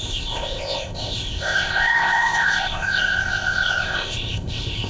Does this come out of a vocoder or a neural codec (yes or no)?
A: yes